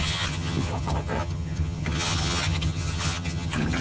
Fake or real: fake